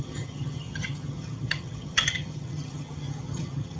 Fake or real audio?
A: fake